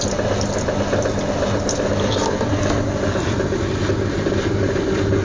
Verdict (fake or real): real